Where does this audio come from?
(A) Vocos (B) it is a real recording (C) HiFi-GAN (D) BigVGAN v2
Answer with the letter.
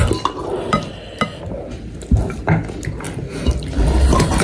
B